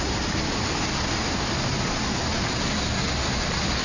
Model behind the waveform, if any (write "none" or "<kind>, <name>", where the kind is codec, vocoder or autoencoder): none